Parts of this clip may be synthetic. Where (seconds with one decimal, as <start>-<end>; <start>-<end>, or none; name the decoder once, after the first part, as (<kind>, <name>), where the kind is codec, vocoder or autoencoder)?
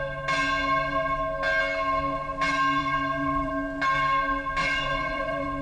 2.8-3.5 (vocoder, Vocos); 4.6-5.6